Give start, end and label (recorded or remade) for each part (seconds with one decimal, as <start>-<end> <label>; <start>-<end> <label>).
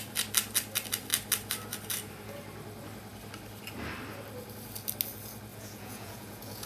0.0-5.5 recorded; 5.5-6.7 remade